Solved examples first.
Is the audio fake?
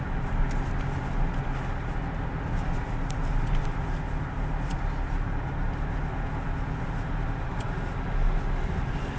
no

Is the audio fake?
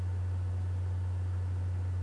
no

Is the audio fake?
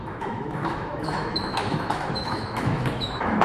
yes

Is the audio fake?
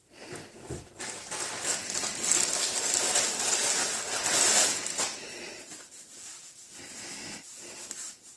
no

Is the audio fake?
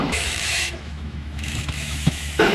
yes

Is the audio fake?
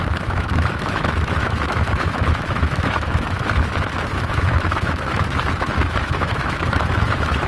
yes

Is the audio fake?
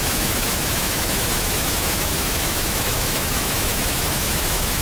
yes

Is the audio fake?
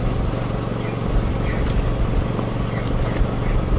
no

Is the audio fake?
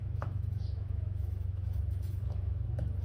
yes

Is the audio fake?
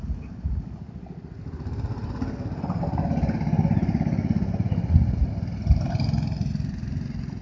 no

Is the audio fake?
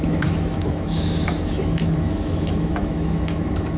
yes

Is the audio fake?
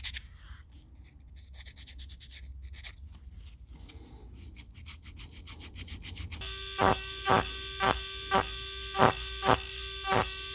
no